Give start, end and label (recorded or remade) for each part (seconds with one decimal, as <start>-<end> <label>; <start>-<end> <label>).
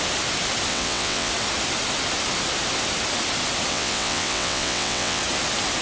0.0-0.7 recorded; 0.7-1.3 remade; 1.3-3.7 recorded; 3.7-5.2 remade; 5.2-5.8 recorded